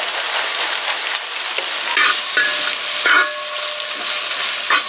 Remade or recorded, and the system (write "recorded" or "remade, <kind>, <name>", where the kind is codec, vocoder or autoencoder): recorded